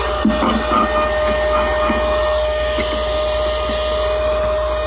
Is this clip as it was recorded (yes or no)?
yes